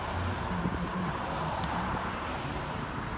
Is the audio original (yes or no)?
yes